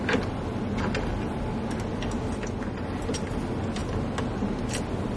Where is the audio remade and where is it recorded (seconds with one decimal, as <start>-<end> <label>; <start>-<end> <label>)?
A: 0.0-5.2 recorded